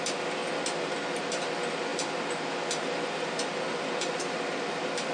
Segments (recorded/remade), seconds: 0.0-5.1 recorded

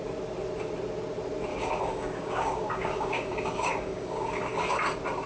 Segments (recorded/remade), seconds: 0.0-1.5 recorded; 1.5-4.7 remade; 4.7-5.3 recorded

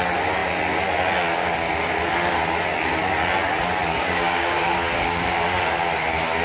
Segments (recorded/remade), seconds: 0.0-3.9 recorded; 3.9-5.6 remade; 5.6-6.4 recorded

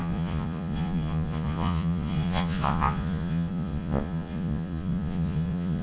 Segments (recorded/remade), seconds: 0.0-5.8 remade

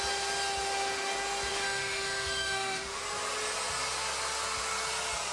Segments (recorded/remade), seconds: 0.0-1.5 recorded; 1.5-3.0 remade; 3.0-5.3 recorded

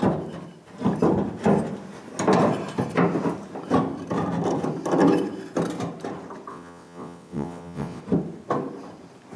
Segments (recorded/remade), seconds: 0.0-6.5 recorded; 6.5-8.0 remade; 8.0-9.4 recorded